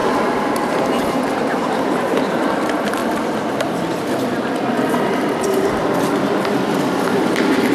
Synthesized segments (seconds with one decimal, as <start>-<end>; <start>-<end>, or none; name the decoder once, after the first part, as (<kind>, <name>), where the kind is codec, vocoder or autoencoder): 0.0-7.7 (vocoder, BigVGAN v2)